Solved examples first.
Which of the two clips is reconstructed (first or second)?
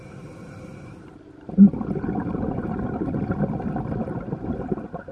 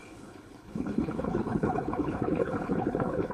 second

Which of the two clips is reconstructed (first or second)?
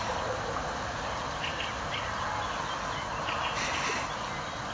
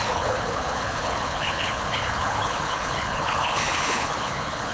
second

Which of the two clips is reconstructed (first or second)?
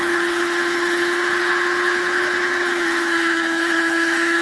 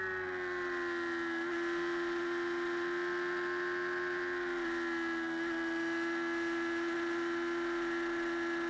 first